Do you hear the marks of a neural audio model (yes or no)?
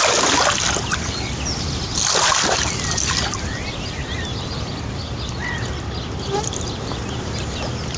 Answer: no